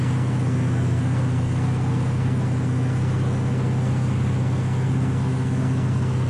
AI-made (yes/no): yes